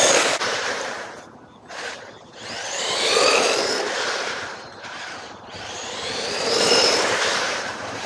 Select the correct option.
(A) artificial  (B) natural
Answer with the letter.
A